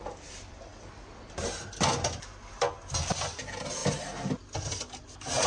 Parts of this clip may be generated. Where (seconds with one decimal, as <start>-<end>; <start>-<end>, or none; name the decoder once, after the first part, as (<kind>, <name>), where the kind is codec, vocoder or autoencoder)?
none